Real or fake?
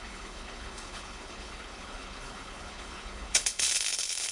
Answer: fake